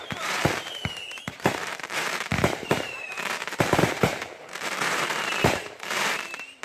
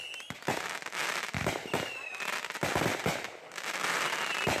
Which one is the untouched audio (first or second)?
second